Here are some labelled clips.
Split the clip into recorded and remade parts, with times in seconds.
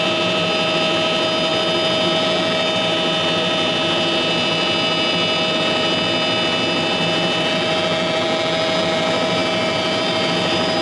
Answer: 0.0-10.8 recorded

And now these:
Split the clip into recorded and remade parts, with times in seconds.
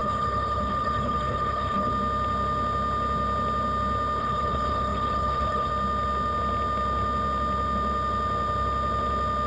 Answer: 0.0-1.9 remade; 1.9-4.2 recorded; 4.2-5.7 remade; 5.7-9.5 recorded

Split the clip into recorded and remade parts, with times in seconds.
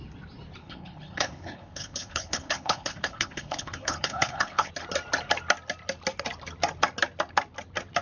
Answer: 0.0-0.6 recorded; 0.6-4.7 remade; 4.7-8.0 recorded